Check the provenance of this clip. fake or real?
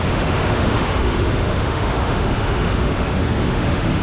fake